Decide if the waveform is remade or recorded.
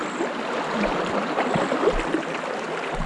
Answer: recorded